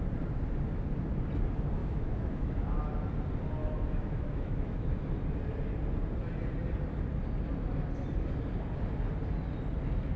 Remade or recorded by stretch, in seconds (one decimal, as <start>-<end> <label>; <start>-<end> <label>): 0.0-1.8 recorded; 1.8-2.8 remade; 2.8-3.6 recorded; 3.6-5.0 remade; 5.0-10.2 recorded